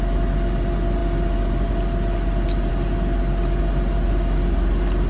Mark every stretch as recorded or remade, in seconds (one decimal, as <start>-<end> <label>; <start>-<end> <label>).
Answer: 0.0-5.1 recorded